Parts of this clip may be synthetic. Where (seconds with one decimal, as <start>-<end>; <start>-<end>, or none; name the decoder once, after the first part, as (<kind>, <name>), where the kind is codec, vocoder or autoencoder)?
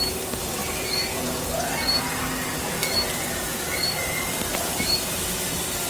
none